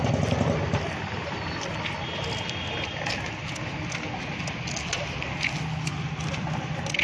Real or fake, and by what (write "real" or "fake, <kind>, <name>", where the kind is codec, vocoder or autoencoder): real